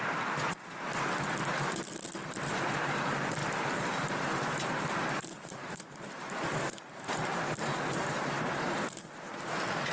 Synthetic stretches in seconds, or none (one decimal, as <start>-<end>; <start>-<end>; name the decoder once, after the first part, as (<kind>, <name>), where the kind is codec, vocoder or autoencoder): 3.4-8.6 (vocoder, BigVGAN v2)